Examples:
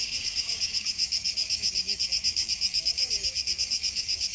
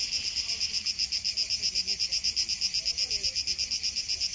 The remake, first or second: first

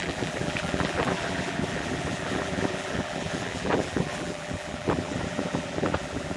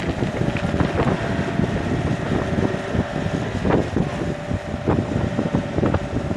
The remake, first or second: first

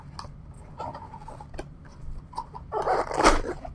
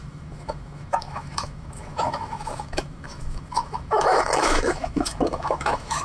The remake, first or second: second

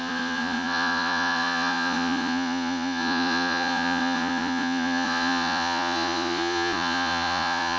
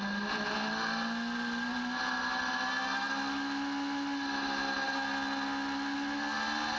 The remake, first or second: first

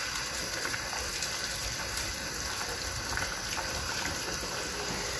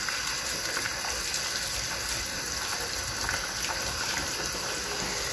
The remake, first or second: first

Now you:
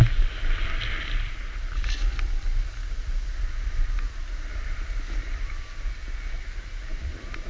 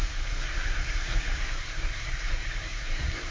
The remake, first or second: second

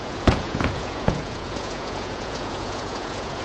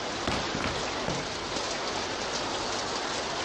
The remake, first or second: first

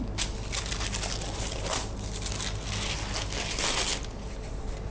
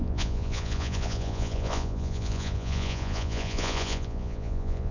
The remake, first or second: second